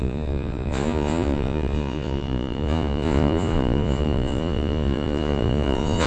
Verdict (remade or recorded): remade